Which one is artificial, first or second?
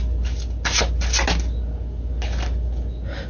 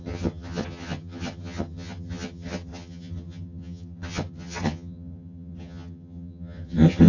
second